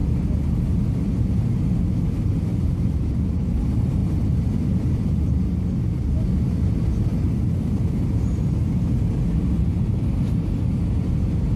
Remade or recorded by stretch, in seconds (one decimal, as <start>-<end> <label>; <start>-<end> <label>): 0.0-2.5 recorded; 2.5-3.1 remade; 3.1-4.0 recorded; 4.0-5.2 remade; 5.2-11.6 recorded